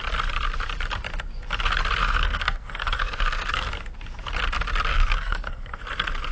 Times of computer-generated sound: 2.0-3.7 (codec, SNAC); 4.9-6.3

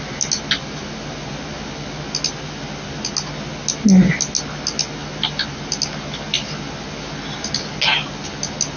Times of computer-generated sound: none

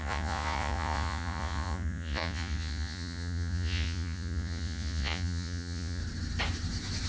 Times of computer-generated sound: 0.0-6.0 (vocoder, Vocos)

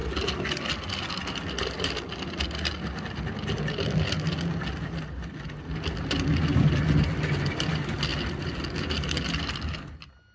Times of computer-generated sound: none

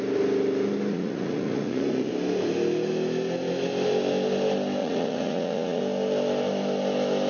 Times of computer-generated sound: 0.9-2.1 (vocoder, Vocos); 4.8-5.8

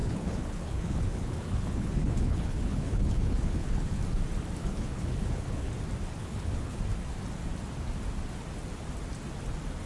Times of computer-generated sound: 0.0-4.0 (codec, HILCodec); 4.6-5.7; 6.2-6.8